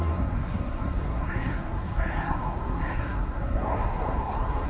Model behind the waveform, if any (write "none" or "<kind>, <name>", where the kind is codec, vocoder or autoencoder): codec, SNAC